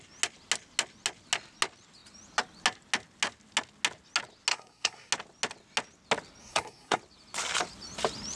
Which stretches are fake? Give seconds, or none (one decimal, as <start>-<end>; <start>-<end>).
4.5-5.1; 6.4-7.0